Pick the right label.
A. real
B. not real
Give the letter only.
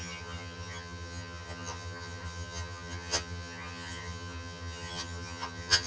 B